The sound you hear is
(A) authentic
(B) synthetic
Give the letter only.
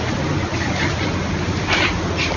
A